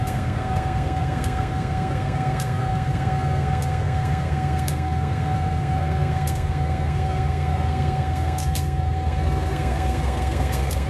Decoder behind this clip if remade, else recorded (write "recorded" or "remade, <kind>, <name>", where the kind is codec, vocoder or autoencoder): remade, codec, SNAC